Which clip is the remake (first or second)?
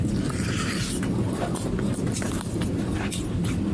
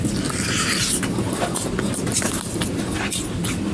first